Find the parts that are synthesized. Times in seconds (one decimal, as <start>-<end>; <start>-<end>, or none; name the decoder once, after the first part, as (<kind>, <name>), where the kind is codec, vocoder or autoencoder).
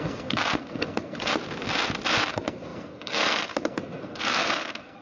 0.0-1.3 (codec, SNAC); 2.3-5.0